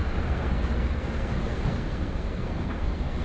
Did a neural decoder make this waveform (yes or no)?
yes